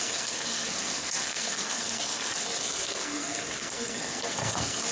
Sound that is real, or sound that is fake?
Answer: fake